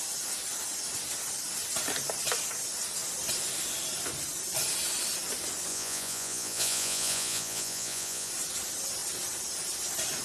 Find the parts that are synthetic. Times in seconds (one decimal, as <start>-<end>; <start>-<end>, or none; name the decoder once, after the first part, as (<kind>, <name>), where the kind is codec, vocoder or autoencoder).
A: 5.7-8.3 (vocoder, Vocos)